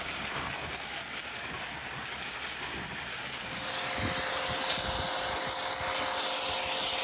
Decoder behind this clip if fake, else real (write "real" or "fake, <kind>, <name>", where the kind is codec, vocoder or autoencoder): real